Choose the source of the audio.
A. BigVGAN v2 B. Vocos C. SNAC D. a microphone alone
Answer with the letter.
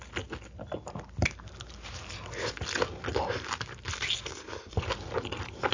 D